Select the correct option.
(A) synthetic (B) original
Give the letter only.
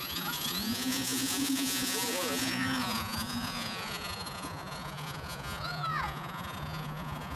A